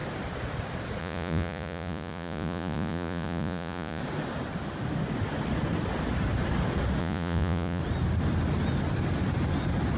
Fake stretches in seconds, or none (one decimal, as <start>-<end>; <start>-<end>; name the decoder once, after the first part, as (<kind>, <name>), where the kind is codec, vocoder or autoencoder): 1.0-4.0 (vocoder, Vocos); 7.0-7.8